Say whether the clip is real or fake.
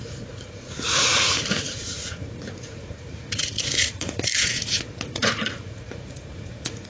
fake